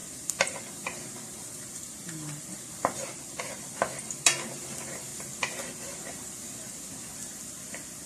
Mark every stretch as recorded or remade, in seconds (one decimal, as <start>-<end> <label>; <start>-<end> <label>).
0.0-0.7 recorded; 0.7-1.8 remade; 1.8-3.4 recorded; 3.4-5.1 remade; 5.1-7.4 recorded; 7.4-8.1 remade